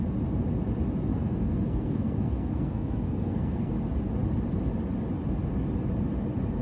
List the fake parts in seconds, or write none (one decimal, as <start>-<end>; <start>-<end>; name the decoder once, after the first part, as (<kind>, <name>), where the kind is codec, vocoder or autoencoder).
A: 1.1-3.7 (codec, SNAC)